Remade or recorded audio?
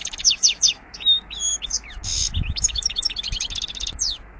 remade